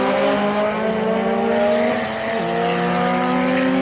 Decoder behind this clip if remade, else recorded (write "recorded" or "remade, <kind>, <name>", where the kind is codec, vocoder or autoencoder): recorded